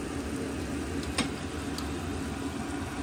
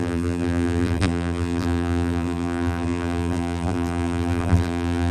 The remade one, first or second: second